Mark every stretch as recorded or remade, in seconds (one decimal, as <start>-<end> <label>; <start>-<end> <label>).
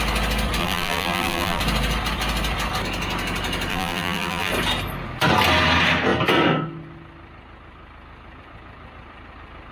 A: 0.0-0.6 recorded; 0.6-1.6 remade; 1.6-3.7 recorded; 3.7-4.5 remade; 4.5-9.7 recorded